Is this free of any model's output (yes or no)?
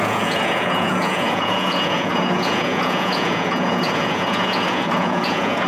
no